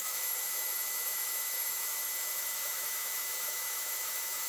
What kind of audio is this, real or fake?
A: fake